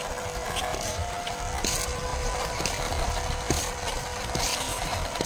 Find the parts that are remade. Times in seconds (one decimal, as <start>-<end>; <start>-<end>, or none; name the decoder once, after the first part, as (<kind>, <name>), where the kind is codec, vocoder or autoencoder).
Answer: 2.1-2.7 (vocoder, BigVGAN v2); 4.7-5.3